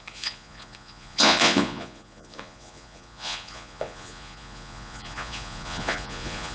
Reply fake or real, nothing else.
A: fake